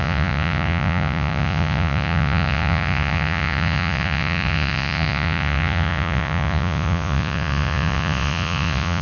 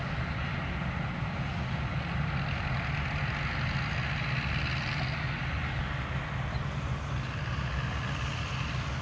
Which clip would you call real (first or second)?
second